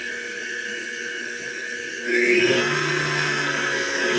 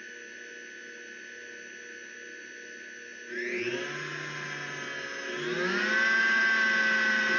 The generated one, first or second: first